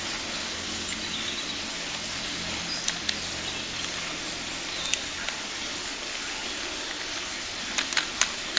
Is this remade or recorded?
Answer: recorded